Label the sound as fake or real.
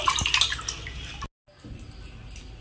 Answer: real